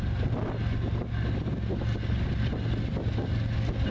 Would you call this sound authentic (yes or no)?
yes